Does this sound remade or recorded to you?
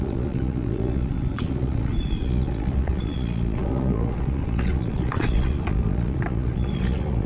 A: remade